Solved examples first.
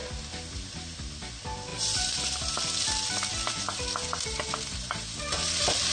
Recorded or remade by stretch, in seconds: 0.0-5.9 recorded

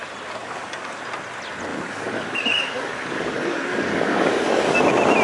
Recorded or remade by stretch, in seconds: 0.0-0.4 recorded; 0.4-1.0 remade; 1.0-1.7 recorded; 1.7-4.8 remade; 4.8-5.2 recorded

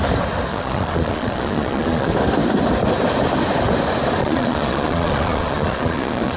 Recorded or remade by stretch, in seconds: 0.0-0.5 recorded; 0.5-2.1 remade; 2.1-4.2 recorded; 4.2-6.4 remade

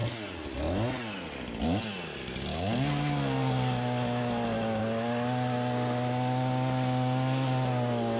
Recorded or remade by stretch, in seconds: 0.0-8.2 recorded

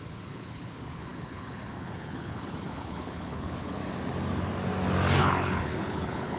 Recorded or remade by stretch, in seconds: 0.0-3.8 remade; 3.8-5.2 recorded; 5.2-6.4 remade

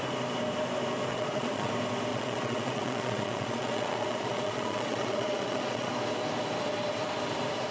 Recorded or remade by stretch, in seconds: 0.0-1.1 recorded; 1.1-1.7 remade; 1.7-2.1 recorded; 2.1-5.9 remade; 5.9-7.7 recorded

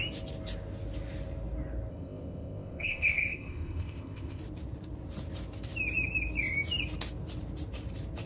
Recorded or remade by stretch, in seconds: 0.0-1.9 recorded; 1.9-4.4 remade; 4.4-8.3 recorded